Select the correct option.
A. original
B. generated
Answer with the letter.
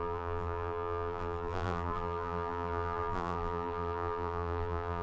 B